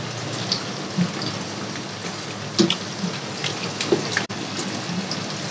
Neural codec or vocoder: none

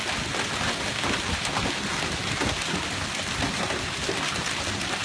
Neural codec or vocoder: none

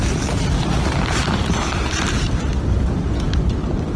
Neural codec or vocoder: none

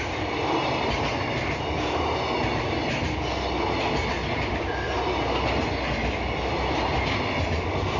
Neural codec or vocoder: none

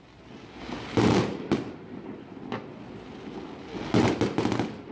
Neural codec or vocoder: none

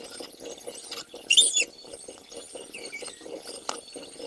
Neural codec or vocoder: none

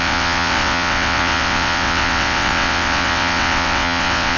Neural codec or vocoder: vocoder, WaveNeXt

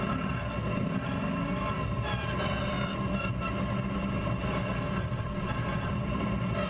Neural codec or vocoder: none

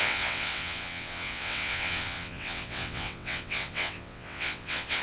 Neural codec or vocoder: vocoder, WaveNeXt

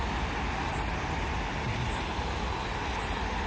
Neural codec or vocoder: none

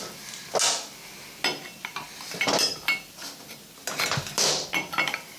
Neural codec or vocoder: none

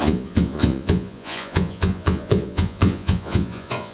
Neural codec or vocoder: vocoder, Vocos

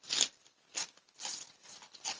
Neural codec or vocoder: none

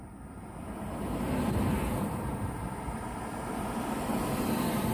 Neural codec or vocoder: none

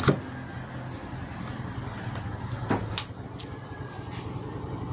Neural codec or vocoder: none